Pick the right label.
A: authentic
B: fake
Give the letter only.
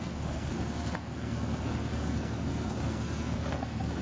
B